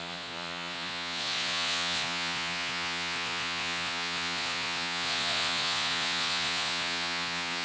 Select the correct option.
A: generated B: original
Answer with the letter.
A